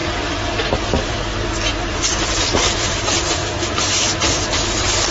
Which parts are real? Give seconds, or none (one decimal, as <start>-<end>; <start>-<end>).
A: 3.4-5.1

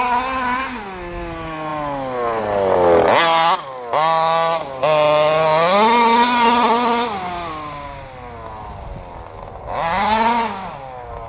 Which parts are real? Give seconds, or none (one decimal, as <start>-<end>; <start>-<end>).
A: 0.0-11.3

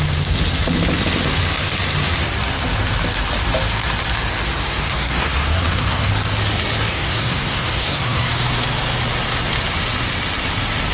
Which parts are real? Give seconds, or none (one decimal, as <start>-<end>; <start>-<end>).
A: 0.0-4.6; 6.1-6.9; 8.3-10.9